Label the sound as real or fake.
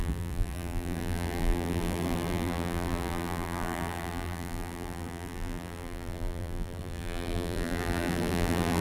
fake